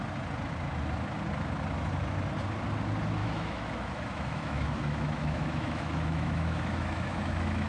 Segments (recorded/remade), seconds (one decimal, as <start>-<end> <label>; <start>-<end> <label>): 0.0-3.2 recorded; 3.2-7.7 remade